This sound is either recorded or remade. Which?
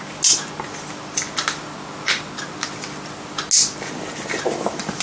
recorded